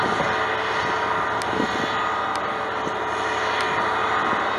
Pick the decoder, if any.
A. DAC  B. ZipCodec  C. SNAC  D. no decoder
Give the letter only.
D